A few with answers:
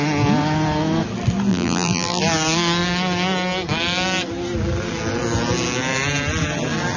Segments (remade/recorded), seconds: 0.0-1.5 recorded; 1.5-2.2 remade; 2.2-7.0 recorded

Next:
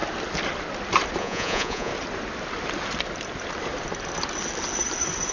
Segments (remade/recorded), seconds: 0.0-1.2 recorded; 1.2-1.9 remade; 1.9-5.3 recorded

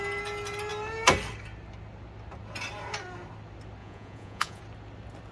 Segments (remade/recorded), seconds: 0.0-3.8 recorded; 3.8-4.6 remade; 4.6-5.3 recorded